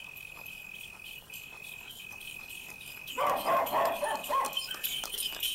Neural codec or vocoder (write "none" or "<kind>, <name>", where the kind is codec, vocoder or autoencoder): codec, DAC